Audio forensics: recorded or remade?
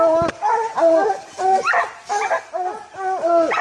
recorded